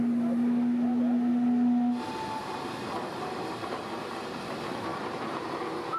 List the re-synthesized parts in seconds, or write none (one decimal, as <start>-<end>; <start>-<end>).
2.4-3.8; 4.9-5.5